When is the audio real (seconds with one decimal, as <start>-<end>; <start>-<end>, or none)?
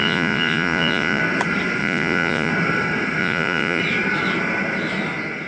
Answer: 1.2-1.8; 2.5-3.2; 3.8-5.5